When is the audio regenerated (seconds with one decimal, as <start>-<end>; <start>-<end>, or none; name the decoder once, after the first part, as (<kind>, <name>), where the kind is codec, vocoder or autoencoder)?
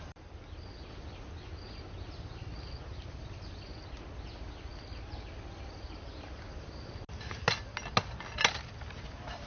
none